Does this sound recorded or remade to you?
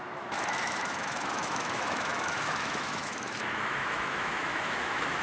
remade